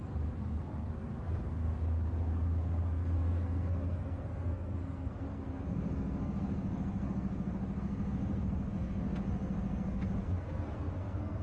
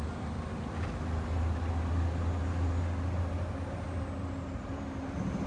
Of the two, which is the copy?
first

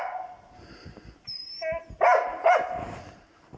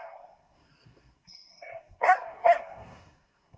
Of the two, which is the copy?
second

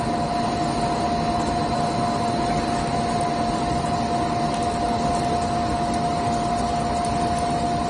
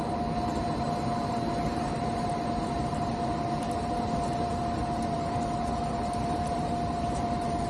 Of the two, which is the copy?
second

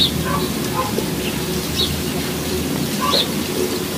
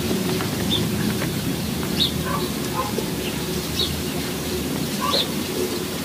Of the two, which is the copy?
second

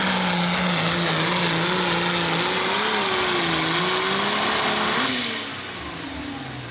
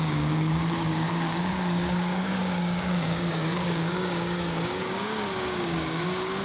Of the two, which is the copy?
second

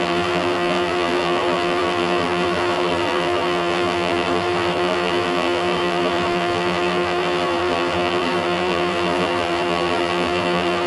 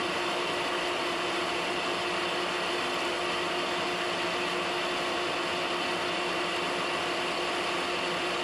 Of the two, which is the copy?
first